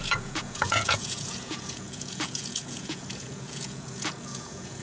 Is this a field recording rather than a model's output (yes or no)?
no